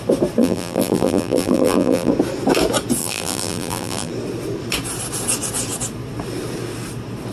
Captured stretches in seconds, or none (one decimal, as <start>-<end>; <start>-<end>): 0.0-0.4; 2.1-3.0; 4.1-7.3